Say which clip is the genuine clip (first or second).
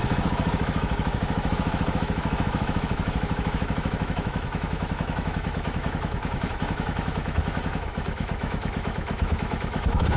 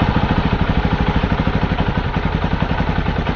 second